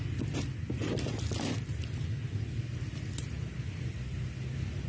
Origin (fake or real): real